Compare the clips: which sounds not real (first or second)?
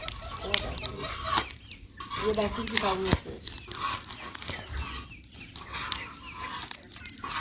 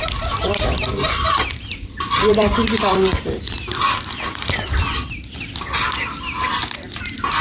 second